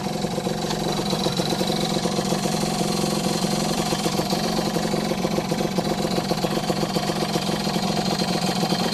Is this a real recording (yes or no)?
no